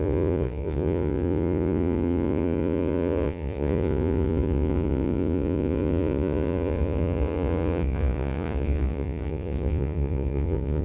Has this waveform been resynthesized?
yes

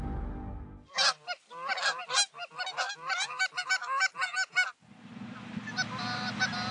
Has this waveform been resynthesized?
no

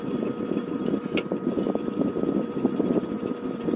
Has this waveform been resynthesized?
yes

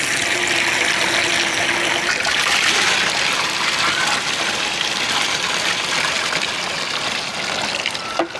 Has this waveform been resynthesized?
no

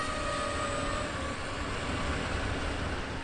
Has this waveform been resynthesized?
no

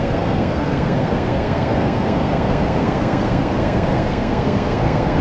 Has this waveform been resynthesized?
yes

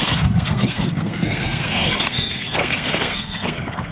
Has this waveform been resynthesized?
yes